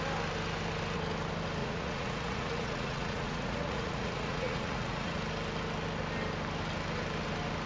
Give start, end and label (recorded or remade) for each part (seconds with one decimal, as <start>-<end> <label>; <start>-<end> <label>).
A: 0.0-1.6 recorded; 1.6-5.2 remade; 5.2-7.7 recorded